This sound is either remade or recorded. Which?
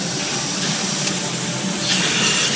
recorded